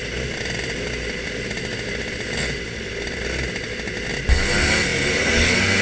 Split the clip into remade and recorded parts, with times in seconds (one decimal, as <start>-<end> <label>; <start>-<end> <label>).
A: 0.0-5.8 recorded